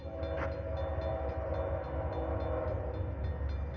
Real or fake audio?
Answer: real